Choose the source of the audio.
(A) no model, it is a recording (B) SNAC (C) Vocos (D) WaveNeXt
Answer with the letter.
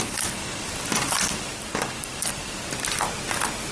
A